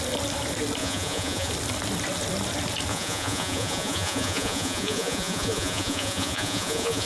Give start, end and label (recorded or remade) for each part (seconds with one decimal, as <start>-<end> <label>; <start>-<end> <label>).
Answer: 0.0-0.8 recorded; 0.8-1.5 remade; 1.5-2.9 recorded; 2.9-7.1 remade